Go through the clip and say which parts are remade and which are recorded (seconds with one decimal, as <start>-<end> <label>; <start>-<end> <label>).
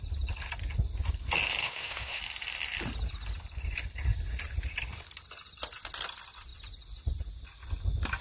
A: 0.0-1.6 recorded; 1.6-2.2 remade; 2.2-8.2 recorded